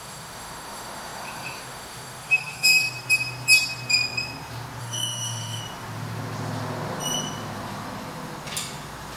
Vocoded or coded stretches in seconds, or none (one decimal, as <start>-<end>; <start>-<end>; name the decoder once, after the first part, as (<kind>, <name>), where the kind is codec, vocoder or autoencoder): 0.0-2.8 (autoencoder, DAC-VAE); 4.8-5.6